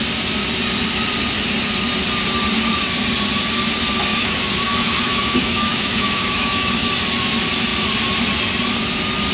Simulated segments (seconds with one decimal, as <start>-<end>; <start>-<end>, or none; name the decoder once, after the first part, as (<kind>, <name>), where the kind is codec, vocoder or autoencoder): 4.1-6.9 (autoencoder, DAC-VAE)

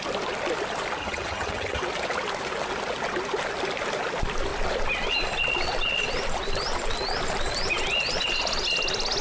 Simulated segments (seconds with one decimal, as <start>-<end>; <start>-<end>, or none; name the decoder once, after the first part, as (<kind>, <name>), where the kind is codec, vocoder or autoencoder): 1.0-1.8 (vocoder, HiFi-GAN)

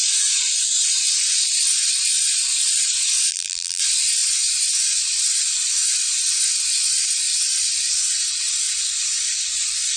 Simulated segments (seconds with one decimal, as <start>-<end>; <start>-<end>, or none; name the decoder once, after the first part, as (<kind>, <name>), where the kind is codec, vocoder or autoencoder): 3.3-3.8 (vocoder, BigVGAN v2)

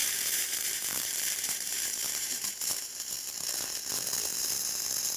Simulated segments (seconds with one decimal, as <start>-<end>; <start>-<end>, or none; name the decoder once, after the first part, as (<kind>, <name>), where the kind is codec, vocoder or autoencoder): 0.0-3.1 (vocoder, BigVGAN v2)

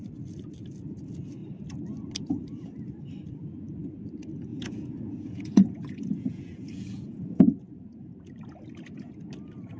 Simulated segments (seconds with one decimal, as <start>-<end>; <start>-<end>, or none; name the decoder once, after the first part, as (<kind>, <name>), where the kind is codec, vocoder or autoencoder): 4.5-8.1 (vocoder, Vocos)

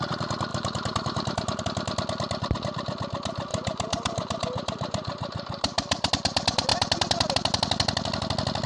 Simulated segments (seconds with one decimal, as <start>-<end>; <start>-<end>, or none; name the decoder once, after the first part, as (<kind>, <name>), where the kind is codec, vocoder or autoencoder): 0.5-1.6 (vocoder, BigVGAN v2); 3.5-6.1

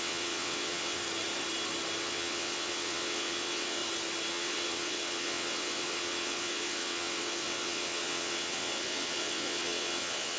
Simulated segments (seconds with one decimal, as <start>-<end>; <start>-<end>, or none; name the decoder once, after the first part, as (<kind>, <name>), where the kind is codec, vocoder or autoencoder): 0.0-1.0 (vocoder, WaveNeXt); 2.0-3.8; 4.3-10.4